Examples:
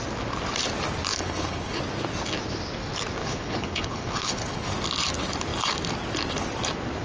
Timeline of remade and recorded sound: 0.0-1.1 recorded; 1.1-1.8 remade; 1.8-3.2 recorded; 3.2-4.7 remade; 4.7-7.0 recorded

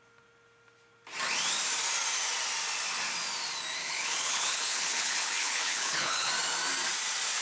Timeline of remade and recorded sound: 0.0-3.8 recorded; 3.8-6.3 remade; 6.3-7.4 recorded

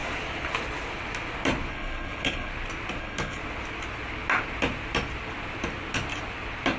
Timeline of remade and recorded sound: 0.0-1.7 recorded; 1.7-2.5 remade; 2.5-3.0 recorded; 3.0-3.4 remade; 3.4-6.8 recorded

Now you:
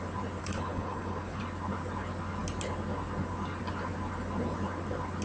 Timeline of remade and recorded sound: 0.0-0.4 recorded; 0.4-1.4 remade; 1.4-5.2 recorded